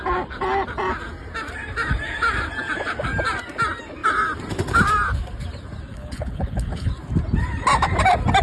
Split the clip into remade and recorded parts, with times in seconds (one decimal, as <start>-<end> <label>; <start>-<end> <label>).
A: 0.0-5.9 recorded; 5.9-6.9 remade; 6.9-8.4 recorded